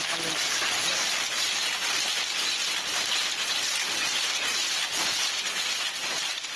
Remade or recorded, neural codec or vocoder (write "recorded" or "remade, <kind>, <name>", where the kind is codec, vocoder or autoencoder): recorded